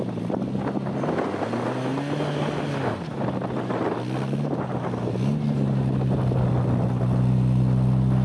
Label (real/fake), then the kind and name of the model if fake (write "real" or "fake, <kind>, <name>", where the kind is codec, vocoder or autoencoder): real